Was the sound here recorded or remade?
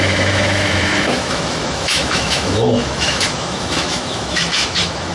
remade